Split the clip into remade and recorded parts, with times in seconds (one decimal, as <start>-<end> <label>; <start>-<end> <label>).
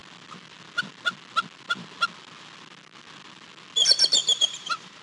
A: 0.0-4.2 recorded; 4.2-5.0 remade